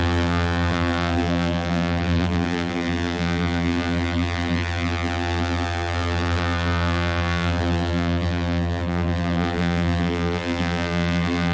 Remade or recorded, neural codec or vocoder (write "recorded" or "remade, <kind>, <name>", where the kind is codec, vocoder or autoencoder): remade, vocoder, BigVGAN v2